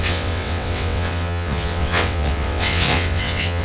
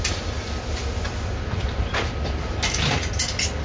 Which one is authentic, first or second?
second